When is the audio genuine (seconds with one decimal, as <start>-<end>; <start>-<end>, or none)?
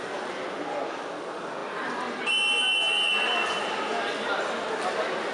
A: 0.0-1.6; 2.2-5.3